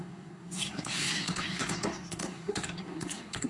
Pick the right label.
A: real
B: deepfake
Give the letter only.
B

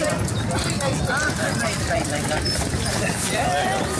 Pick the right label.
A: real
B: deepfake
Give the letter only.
A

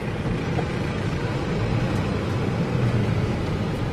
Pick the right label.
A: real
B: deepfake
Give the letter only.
A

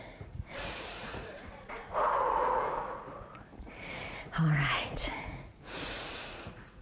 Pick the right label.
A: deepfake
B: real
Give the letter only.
A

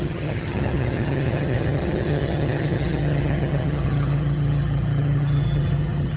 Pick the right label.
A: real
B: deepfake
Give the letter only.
B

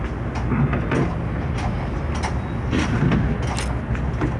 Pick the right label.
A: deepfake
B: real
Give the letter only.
B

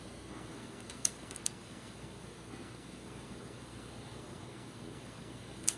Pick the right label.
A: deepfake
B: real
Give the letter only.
A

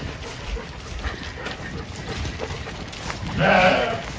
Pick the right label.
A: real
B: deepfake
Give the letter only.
A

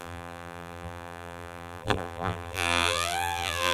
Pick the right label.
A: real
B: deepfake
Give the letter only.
B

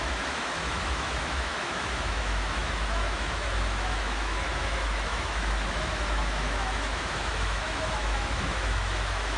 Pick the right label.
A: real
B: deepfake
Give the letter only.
B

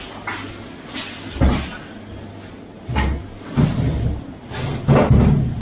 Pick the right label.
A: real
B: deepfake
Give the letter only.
A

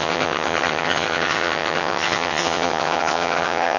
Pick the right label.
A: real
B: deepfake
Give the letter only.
B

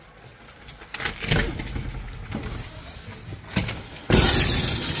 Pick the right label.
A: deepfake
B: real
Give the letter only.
B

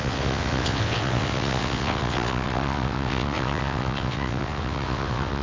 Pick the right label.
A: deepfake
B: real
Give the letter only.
A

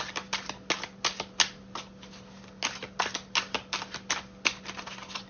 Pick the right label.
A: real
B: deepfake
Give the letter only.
A